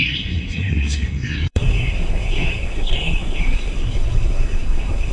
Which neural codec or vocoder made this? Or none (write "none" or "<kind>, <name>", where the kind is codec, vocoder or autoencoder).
codec, SNAC